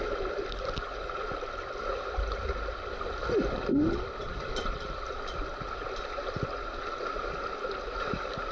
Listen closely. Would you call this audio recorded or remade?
recorded